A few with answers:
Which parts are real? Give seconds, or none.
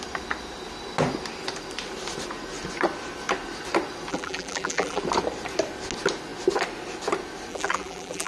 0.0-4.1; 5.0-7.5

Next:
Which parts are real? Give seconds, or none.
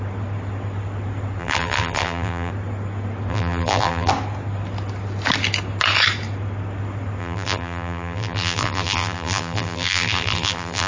0.0-1.4; 2.5-3.3; 4.1-7.2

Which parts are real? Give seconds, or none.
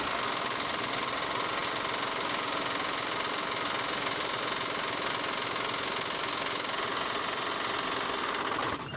0.0-9.0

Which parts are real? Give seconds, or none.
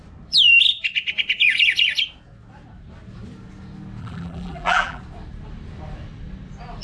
0.0-4.0; 5.0-6.8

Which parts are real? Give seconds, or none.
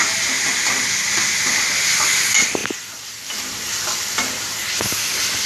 0.0-2.6; 4.1-5.5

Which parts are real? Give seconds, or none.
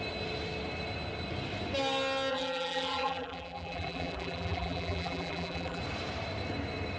0.0-2.3; 5.8-7.0